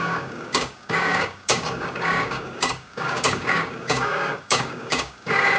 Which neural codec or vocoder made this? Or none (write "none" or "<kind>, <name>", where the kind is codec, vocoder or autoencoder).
codec, DAC